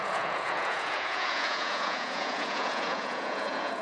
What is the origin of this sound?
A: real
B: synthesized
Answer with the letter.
B